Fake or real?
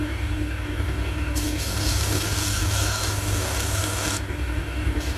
fake